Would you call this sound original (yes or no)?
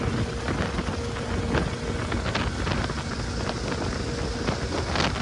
yes